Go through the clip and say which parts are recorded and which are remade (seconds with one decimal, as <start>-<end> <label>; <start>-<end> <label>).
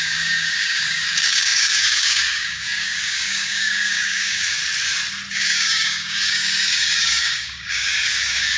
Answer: 0.0-4.6 remade; 4.6-5.3 recorded; 5.3-8.6 remade